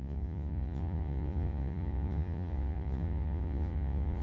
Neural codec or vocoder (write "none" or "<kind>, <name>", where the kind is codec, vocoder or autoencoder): vocoder, Vocos